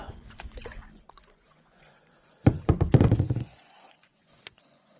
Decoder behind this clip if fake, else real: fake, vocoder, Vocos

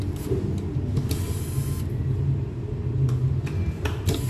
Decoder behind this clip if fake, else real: real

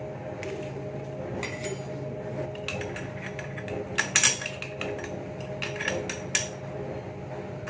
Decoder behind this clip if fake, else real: real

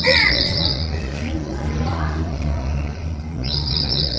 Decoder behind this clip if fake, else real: fake, vocoder, Vocos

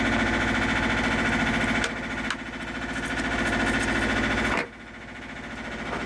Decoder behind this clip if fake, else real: real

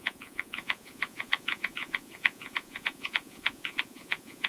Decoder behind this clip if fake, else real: fake, vocoder, Vocos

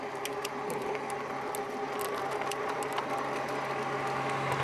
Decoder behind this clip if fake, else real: real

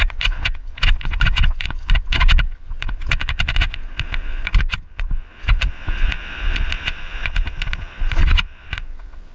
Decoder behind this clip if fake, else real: fake, vocoder, Vocos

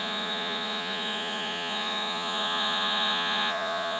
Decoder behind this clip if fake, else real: fake, vocoder, Vocos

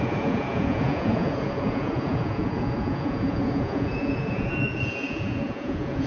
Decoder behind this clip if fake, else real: fake, vocoder, Vocos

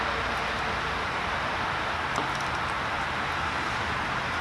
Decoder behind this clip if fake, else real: real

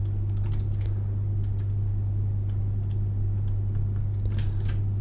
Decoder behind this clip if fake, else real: real